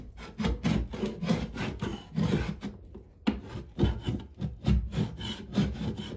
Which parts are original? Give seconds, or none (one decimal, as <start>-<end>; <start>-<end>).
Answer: 0.0-6.2